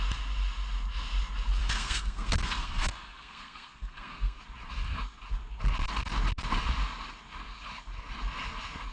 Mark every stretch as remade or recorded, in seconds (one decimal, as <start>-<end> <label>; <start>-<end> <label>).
0.0-1.6 recorded; 1.6-4.4 remade; 4.4-8.9 recorded